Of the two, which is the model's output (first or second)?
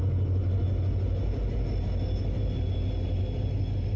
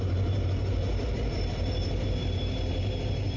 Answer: second